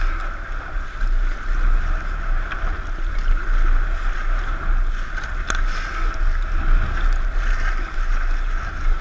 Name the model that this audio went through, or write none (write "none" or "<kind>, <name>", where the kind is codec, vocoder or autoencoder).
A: none